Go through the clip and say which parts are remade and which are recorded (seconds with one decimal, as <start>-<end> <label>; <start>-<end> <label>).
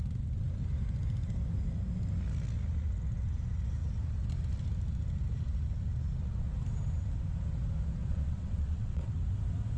0.0-8.0 recorded; 8.0-9.1 remade; 9.1-9.8 recorded